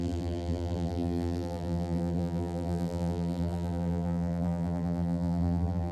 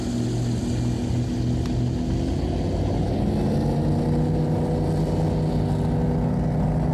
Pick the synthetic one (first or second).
first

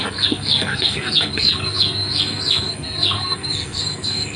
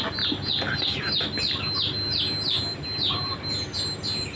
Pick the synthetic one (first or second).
first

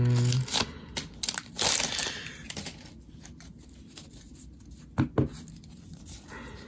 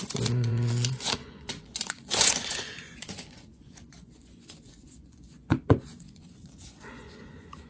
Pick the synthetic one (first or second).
second